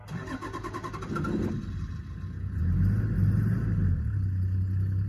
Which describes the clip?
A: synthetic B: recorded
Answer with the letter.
B